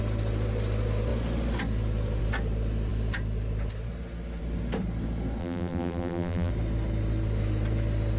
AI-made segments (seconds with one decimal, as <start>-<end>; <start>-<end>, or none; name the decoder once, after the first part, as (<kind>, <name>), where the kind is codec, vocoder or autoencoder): 5.4-6.5 (vocoder, BigVGAN v2)